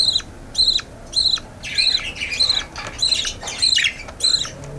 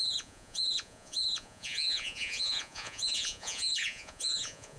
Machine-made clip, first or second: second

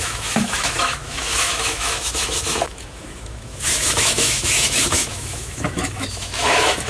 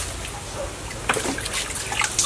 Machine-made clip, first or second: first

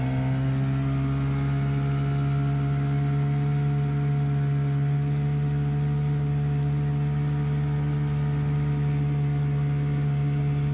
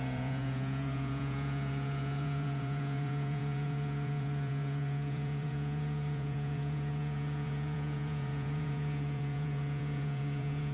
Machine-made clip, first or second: second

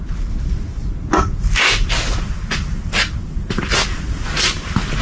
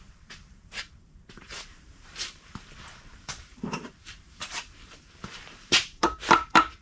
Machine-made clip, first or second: second